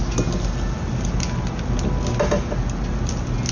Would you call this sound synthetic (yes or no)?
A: no